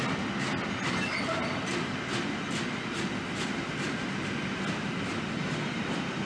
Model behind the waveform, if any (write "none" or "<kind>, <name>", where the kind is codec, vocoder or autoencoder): none